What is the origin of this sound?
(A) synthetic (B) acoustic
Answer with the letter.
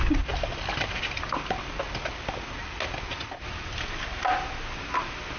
B